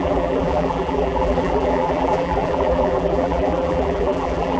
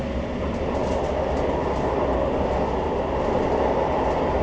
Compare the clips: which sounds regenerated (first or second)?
first